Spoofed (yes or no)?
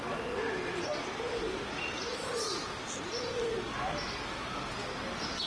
no